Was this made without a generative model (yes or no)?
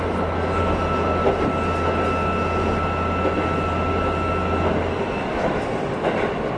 yes